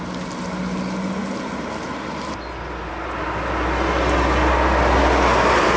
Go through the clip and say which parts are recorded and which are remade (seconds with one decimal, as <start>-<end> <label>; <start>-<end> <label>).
0.0-5.8 recorded